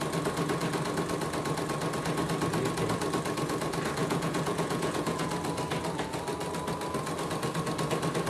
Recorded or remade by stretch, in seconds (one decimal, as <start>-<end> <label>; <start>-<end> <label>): 0.0-4.0 recorded; 4.0-5.3 remade; 5.3-8.3 recorded